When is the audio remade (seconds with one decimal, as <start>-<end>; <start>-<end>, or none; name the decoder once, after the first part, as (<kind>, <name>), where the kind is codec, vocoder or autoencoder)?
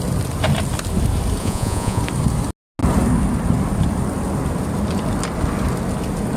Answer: 1.4-2.0 (vocoder, Vocos)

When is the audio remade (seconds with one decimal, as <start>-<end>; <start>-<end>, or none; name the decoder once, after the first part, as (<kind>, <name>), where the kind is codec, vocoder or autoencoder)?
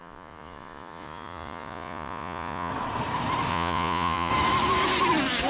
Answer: 0.0-2.7 (vocoder, Vocos); 3.5-4.3